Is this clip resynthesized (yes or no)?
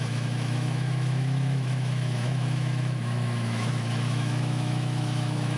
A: yes